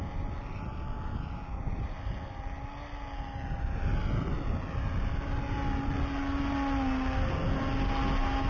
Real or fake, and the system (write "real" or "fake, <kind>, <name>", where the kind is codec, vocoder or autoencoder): real